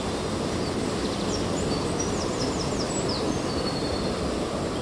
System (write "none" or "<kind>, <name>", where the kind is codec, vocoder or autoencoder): none